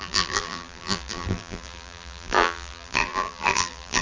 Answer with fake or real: fake